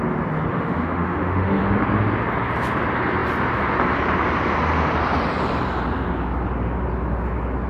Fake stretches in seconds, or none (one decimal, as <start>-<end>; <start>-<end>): 0.5-1.6